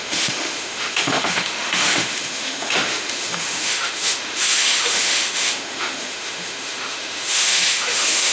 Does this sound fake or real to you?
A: fake